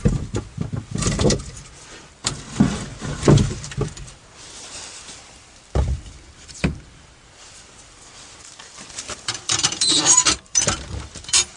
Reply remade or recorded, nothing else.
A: remade